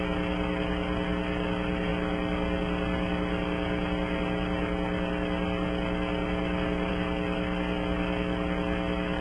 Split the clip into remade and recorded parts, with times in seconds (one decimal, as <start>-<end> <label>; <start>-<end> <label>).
0.0-9.2 recorded